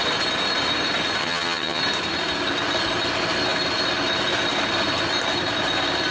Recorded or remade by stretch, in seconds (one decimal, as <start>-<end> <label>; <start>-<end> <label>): 0.0-1.2 recorded; 1.2-1.8 remade; 1.8-6.1 recorded